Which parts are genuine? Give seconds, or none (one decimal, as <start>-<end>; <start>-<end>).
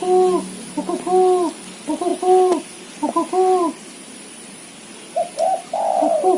0.0-6.4